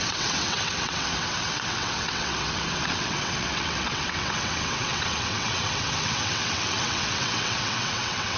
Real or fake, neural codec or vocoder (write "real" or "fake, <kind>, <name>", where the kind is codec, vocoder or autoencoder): fake, vocoder, WaveNeXt